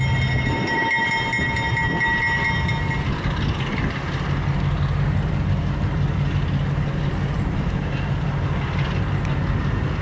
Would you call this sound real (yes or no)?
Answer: yes